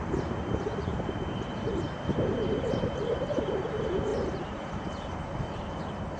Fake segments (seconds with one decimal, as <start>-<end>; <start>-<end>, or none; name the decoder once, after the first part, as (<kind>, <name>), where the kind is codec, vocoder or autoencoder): 0.0-6.2 (vocoder, BigVGAN v2)